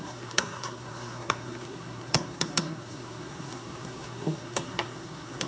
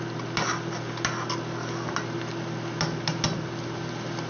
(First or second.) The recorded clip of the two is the second